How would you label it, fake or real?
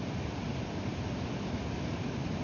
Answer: fake